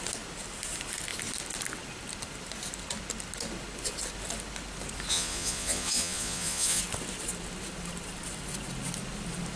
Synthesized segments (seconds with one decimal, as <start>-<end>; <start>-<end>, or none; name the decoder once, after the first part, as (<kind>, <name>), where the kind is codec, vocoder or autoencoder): 5.1-6.8 (vocoder, Vocos)